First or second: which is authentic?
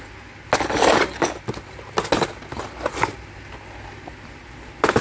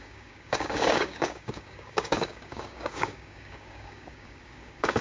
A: first